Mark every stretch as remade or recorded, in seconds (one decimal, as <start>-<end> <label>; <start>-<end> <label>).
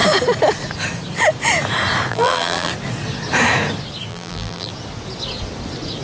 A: 0.0-2.1 recorded; 2.1-2.7 remade; 2.7-4.1 recorded; 4.1-4.7 remade; 4.7-6.0 recorded